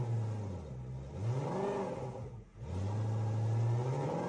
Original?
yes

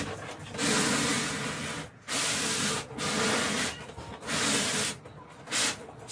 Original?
yes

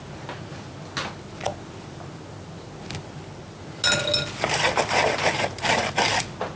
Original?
yes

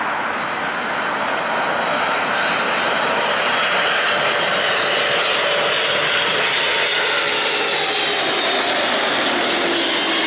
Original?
yes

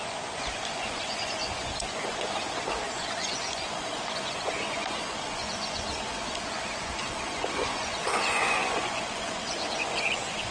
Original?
no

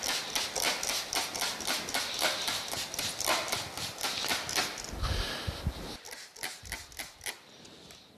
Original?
yes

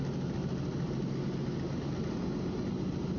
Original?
yes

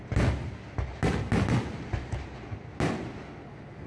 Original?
yes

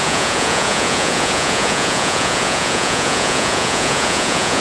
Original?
no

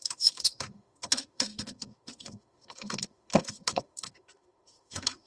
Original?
no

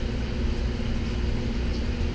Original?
yes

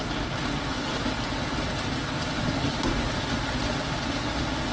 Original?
yes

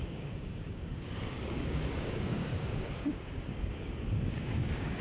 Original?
no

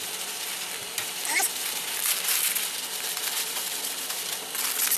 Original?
yes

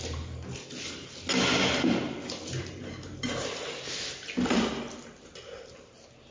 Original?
yes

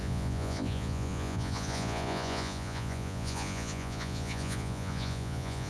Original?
no